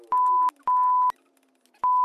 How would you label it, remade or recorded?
recorded